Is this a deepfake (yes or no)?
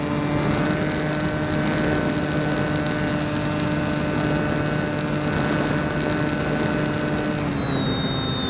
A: no